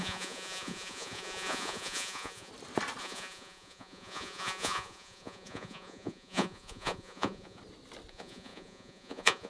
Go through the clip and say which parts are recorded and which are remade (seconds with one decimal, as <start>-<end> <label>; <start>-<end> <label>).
0.0-2.5 remade; 2.5-3.0 recorded; 3.0-7.6 remade; 7.6-8.1 recorded; 8.1-9.5 remade